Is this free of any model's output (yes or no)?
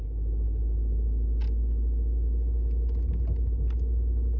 yes